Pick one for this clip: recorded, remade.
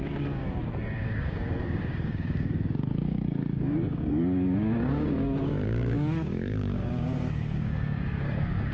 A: remade